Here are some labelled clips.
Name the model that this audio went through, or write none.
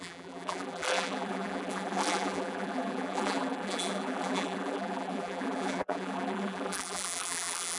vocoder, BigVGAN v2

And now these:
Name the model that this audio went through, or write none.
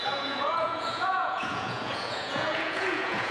vocoder, Vocos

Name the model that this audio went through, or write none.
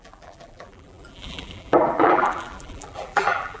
vocoder, BigVGAN v2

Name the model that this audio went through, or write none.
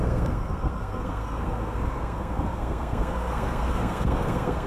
codec, SNAC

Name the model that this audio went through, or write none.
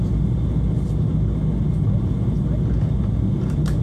none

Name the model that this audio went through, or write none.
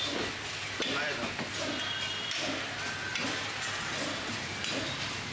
vocoder, BigVGAN v2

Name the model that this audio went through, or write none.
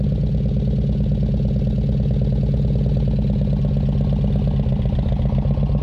none